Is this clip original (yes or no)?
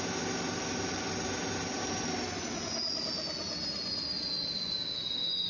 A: yes